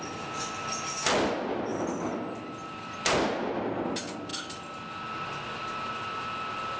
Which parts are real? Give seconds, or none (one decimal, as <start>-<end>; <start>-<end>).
0.0-6.8